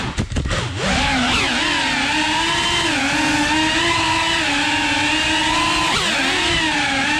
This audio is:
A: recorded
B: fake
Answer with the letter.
A